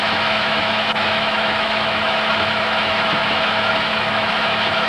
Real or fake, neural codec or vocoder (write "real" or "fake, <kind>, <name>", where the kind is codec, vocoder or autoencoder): fake, autoencoder, DAC-VAE